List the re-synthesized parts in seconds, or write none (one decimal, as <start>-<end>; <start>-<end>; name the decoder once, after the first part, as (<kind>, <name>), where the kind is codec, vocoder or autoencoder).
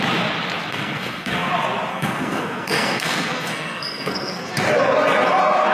0.7-1.5 (codec, SNAC); 1.9-4.5